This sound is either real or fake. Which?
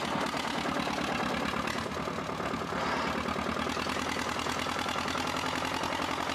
real